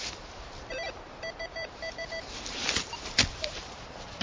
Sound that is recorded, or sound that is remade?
remade